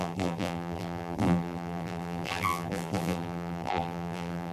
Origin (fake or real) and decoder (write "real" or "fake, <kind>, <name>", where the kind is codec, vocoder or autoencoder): fake, vocoder, BigVGAN v2